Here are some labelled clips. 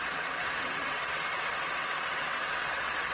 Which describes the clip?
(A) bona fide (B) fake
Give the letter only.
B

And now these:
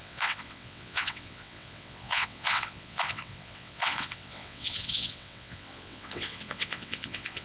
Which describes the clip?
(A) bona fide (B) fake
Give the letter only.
B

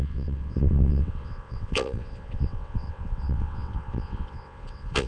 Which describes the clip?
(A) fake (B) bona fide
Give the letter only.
A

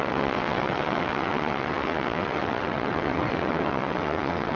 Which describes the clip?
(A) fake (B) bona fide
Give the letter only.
A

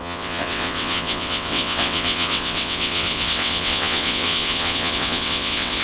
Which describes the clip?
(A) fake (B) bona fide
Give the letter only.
A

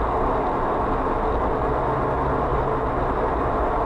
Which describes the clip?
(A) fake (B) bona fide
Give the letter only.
B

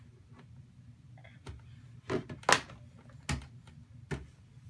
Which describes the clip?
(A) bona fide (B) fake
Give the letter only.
A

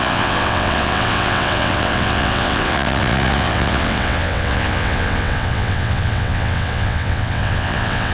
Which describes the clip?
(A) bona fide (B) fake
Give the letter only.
B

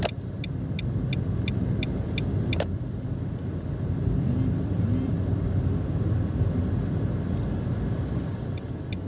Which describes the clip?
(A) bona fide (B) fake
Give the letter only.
A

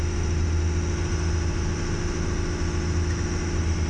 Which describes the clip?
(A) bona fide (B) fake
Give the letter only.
A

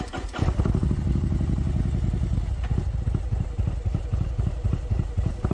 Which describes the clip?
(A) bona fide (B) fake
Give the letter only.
A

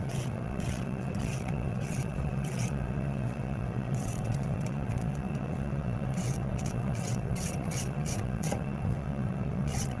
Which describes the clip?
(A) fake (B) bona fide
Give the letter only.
A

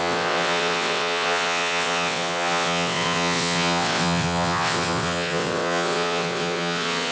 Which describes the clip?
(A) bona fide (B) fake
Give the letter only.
B